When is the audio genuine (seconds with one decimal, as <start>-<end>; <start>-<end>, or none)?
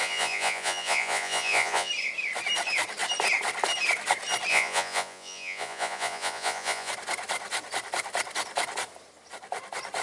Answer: 1.9-4.5; 6.9-10.0